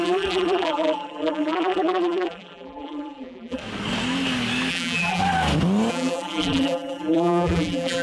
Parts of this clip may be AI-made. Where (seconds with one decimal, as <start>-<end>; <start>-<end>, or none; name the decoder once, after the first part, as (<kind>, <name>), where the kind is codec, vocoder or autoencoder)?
0.0-3.6 (vocoder, BigVGAN v2); 4.7-5.2; 5.9-8.0